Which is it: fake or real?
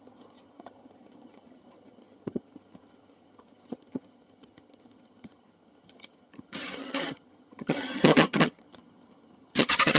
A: fake